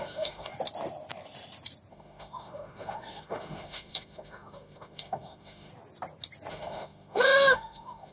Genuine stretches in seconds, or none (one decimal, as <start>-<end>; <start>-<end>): 0.5-1.9; 5.7-6.5